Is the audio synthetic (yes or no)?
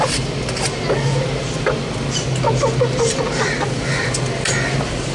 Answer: no